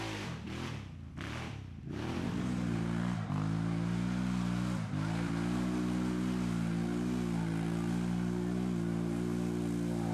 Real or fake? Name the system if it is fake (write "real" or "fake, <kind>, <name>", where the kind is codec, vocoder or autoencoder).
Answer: real